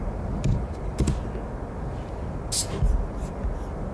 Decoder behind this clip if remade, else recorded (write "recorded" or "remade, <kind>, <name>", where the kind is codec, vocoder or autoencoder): recorded